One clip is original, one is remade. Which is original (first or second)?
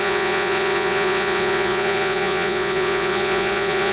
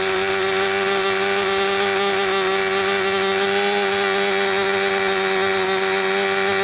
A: second